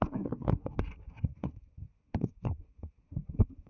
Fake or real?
fake